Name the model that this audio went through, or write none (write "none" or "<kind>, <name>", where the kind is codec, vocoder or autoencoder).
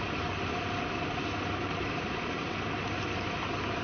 none